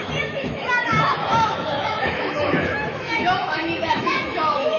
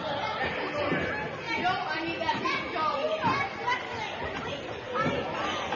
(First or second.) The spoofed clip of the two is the first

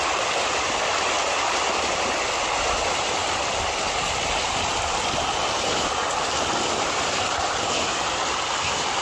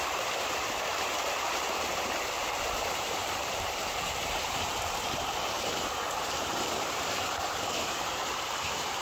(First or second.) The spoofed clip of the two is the second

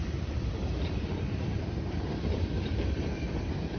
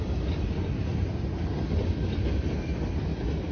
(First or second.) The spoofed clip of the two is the first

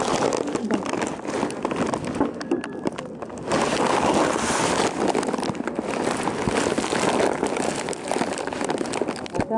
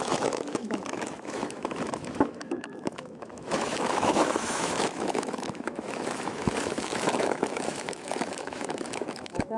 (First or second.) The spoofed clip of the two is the second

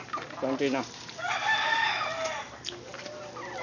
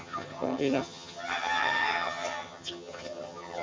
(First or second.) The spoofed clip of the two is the second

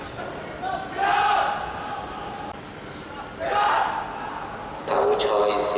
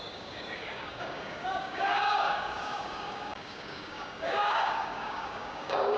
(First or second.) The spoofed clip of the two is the second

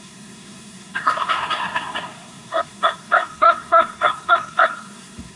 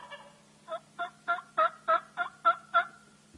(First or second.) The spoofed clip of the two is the first